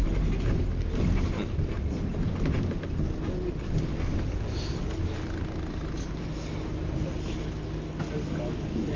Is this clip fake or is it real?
real